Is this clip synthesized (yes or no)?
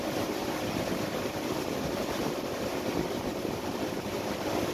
yes